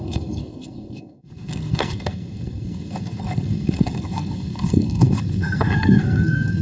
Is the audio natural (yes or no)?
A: no